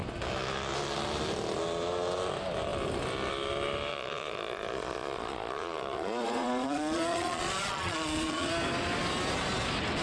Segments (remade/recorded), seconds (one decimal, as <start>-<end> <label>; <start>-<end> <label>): 0.0-3.9 recorded; 3.9-8.5 remade; 8.5-10.0 recorded